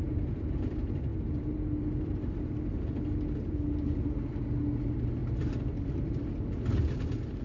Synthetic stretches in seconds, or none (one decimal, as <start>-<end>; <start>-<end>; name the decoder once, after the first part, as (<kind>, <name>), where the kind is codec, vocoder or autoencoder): 1.1-2.6 (vocoder, BigVGAN v2); 5.2-6.3